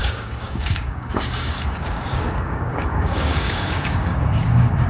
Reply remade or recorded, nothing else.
remade